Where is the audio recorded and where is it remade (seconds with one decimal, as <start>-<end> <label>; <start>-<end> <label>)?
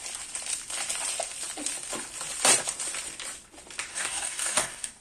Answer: 0.0-3.9 recorded; 3.9-5.0 remade